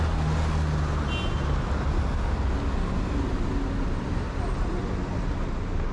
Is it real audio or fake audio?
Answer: real